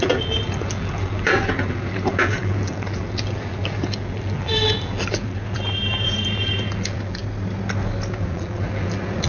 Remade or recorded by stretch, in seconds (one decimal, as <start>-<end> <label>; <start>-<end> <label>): 0.0-7.2 remade; 7.2-8.1 recorded; 8.1-9.3 remade